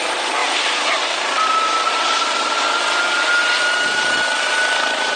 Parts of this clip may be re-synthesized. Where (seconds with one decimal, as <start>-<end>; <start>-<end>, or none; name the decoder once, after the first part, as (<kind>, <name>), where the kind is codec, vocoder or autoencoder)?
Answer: none